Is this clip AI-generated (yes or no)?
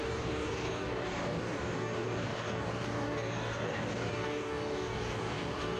yes